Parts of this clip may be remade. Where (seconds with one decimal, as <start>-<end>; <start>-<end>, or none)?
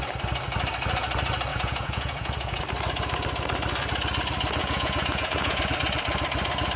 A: 1.5-2.6; 4.6-5.6